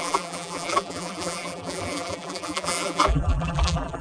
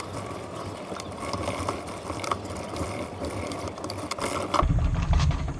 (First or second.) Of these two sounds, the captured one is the second